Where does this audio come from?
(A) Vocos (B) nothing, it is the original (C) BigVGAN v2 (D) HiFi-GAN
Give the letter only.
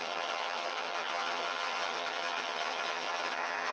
D